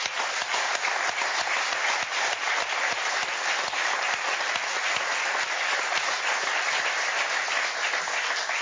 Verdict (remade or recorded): recorded